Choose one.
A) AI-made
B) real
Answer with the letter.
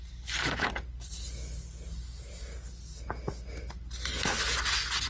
B